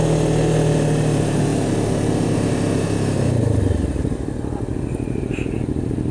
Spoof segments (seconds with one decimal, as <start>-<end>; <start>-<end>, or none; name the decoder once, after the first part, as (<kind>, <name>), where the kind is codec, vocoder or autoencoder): none